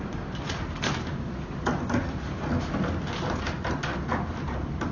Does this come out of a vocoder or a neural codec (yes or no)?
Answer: no